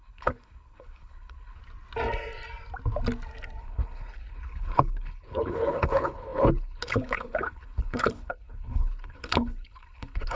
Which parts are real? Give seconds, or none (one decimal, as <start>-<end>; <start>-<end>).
1.6-3.6